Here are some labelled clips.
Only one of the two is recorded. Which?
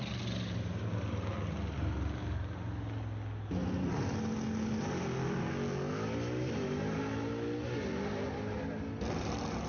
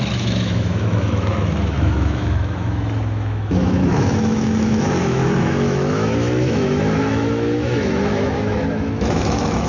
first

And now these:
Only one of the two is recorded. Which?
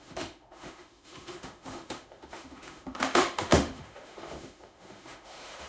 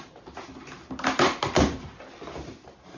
second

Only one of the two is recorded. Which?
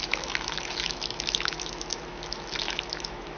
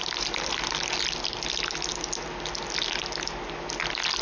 second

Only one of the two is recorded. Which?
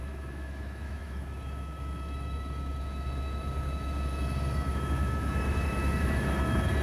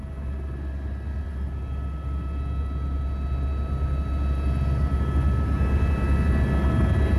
second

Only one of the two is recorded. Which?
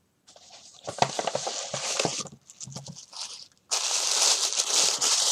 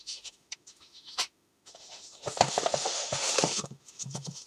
first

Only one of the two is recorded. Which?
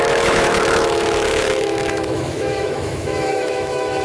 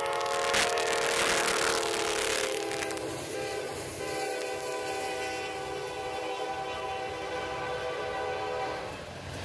second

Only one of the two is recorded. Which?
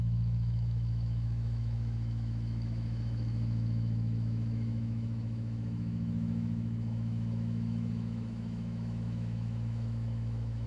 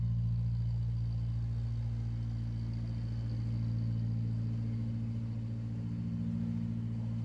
second